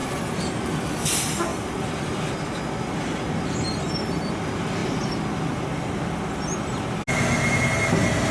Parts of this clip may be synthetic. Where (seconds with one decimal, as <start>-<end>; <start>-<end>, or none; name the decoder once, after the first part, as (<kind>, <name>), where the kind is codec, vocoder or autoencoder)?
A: 1.5-2.3 (vocoder, BigVGAN v2)